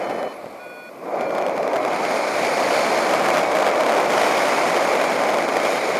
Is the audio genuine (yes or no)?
yes